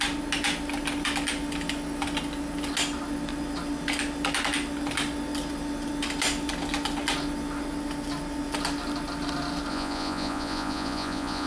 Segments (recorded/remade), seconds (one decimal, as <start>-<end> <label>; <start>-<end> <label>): 0.0-9.7 recorded; 9.7-11.5 remade